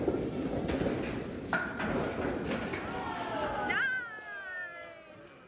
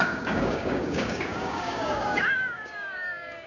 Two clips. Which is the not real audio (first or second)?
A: second